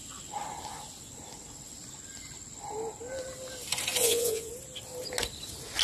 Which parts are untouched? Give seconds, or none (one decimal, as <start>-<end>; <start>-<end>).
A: 0.0-4.0; 4.5-5.8